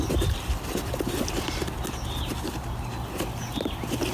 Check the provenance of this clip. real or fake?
real